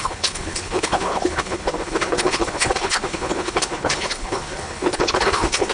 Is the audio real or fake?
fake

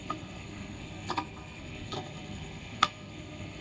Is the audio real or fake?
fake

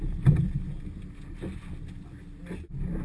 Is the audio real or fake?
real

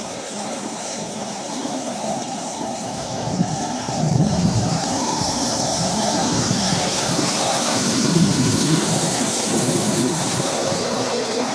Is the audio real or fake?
fake